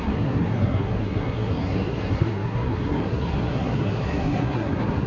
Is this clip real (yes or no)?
no